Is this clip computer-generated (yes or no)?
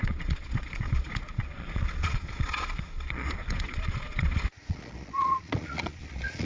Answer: yes